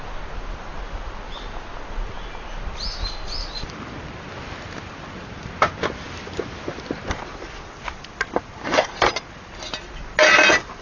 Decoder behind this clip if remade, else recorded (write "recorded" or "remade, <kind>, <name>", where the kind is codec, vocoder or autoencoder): recorded